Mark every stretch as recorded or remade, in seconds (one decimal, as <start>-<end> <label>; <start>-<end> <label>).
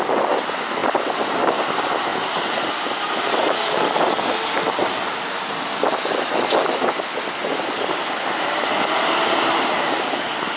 0.0-10.6 recorded